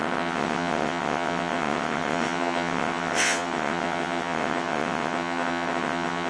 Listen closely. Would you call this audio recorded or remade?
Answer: remade